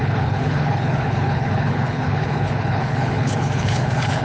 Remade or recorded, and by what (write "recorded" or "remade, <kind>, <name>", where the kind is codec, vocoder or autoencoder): remade, codec, HILCodec